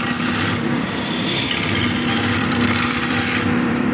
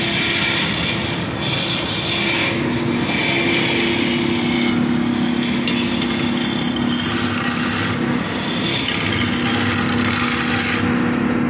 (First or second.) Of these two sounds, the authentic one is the second